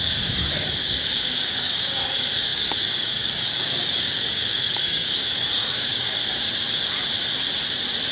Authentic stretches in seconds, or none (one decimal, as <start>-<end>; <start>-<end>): 6.2-8.1